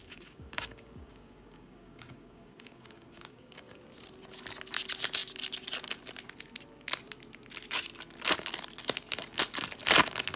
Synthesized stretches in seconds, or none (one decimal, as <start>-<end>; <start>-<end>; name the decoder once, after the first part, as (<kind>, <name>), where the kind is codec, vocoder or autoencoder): 0.0-3.8 (codec, DAC)